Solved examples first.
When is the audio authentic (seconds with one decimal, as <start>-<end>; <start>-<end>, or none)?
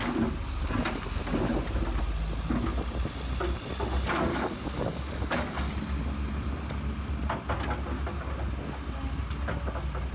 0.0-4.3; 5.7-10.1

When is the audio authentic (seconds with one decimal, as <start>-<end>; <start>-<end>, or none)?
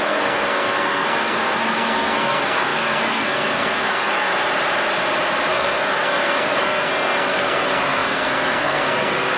4.3-5.5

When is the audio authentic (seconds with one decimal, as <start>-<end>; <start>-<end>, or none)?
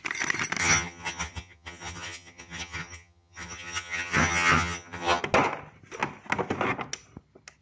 0.0-0.6; 5.2-7.6